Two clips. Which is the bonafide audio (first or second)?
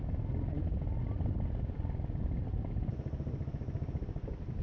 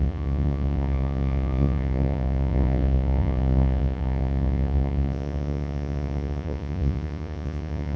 first